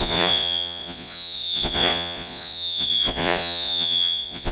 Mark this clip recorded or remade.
remade